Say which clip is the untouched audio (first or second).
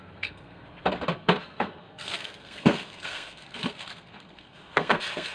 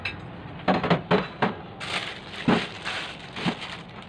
second